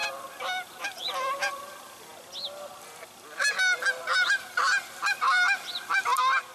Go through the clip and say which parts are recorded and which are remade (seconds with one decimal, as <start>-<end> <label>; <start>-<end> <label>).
0.0-2.1 remade; 2.1-4.4 recorded; 4.4-6.5 remade